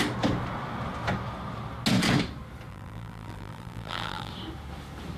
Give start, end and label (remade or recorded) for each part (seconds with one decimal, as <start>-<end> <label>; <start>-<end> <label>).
0.0-2.7 recorded; 2.7-4.3 remade; 4.3-5.2 recorded